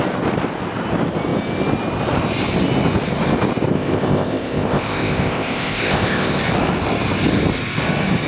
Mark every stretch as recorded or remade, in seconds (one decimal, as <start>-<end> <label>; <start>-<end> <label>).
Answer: 0.0-3.7 recorded; 3.7-6.4 remade; 6.4-8.3 recorded